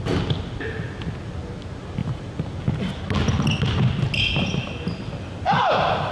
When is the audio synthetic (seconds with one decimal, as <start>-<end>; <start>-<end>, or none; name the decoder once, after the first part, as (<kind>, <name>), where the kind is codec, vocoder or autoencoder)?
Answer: none